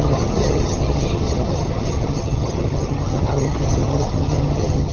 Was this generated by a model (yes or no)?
yes